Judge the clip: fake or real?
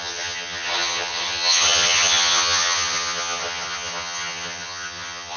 fake